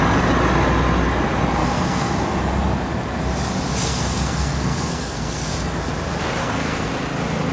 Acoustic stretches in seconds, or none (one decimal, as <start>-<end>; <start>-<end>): 0.0-1.6; 2.1-3.7; 5.5-6.4; 6.9-7.5